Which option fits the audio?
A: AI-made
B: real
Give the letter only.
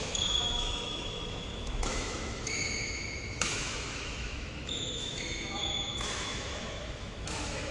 A